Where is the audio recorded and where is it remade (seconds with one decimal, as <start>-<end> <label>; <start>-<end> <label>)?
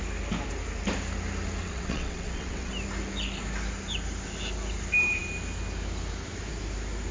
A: 0.0-1.6 recorded; 1.6-2.7 remade; 2.7-7.1 recorded